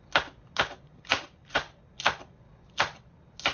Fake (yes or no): no